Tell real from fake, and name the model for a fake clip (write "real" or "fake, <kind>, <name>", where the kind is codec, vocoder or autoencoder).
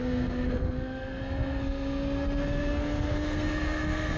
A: fake, codec, SNAC